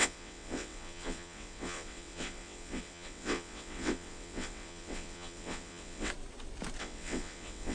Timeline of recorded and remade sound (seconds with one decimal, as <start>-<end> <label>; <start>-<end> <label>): 0.0-6.1 remade; 6.1-6.8 recorded; 6.8-7.7 remade